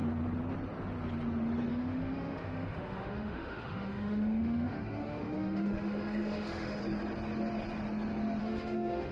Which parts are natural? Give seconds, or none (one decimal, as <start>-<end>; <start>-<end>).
0.0-1.7; 6.8-8.4